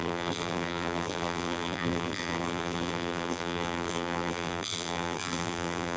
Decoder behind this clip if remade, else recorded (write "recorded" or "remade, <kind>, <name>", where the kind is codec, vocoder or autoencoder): remade, vocoder, BigVGAN v2